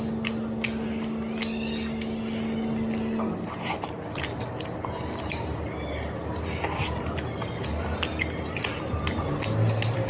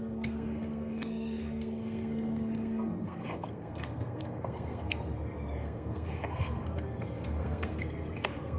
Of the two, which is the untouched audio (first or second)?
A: first